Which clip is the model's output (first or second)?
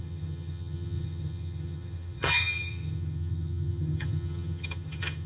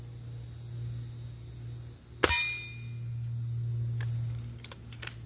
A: first